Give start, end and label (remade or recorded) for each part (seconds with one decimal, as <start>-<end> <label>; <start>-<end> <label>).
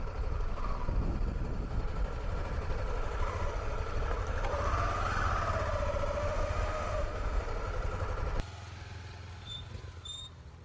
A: 0.0-6.2 recorded; 6.2-7.4 remade; 7.4-10.6 recorded